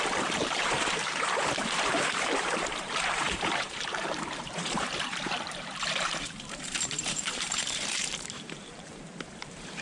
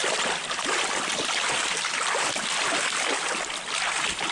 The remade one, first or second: first